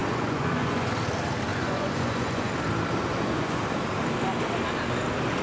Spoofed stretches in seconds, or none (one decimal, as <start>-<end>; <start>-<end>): 0.0-0.9; 1.5-2.5; 3.1-3.6